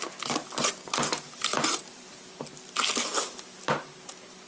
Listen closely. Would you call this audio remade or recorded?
recorded